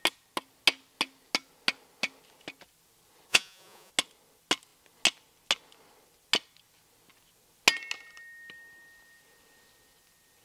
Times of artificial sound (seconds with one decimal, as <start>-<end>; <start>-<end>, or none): 3.3-3.9